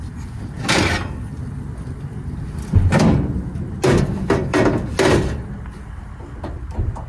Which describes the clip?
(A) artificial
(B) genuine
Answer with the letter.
B